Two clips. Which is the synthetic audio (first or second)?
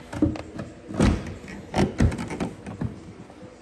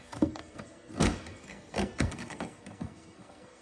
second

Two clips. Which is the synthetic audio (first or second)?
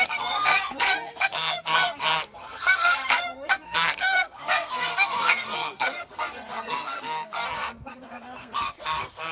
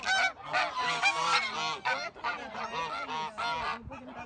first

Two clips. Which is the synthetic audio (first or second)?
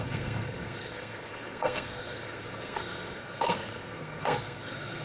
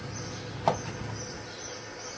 first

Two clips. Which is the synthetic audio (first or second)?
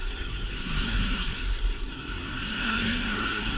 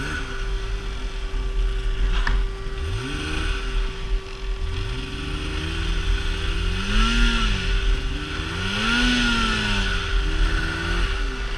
first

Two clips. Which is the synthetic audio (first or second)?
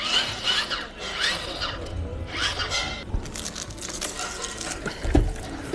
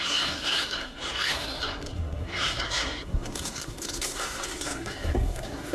second